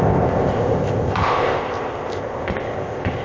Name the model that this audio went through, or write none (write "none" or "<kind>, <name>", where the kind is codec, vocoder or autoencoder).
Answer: codec, ZipCodec